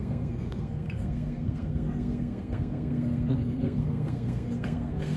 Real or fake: fake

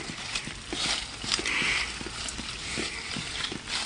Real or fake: real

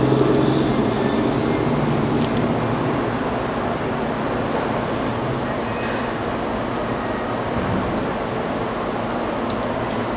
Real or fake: real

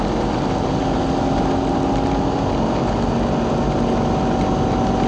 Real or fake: real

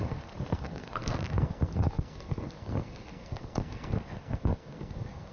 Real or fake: fake